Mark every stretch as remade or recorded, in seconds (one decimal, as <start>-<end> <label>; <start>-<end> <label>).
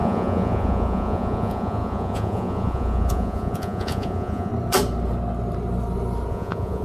0.0-4.5 remade; 4.5-6.3 recorded; 6.3-6.8 remade